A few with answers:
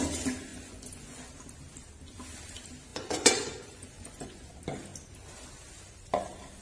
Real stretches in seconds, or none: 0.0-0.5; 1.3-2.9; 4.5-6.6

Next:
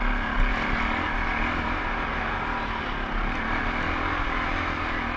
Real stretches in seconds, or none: 0.0-5.2

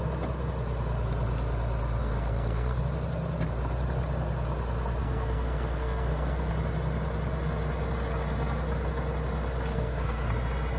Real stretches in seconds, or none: 0.0-2.0; 2.8-5.0; 6.5-9.7; 10.3-10.8

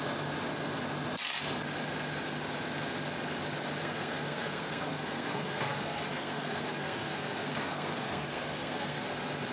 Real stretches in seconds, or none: 0.0-3.8; 9.0-9.5

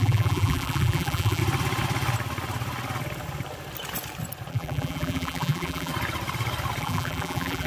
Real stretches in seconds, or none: 1.4-4.5; 5.9-6.8